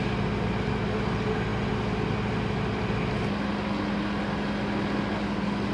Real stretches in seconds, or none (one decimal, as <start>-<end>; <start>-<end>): 0.0-5.7